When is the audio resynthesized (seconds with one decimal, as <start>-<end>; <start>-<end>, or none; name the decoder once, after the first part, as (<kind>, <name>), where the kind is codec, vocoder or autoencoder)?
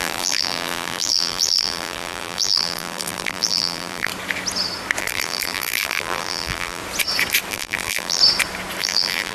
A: 0.0-4.1 (vocoder, BigVGAN v2); 5.0-6.8; 7.5-8.2; 8.8-9.3